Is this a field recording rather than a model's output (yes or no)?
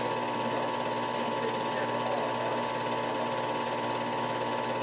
yes